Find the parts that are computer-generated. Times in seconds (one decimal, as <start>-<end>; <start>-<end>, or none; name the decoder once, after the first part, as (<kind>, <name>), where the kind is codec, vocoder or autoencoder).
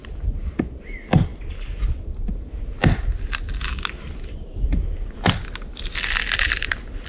none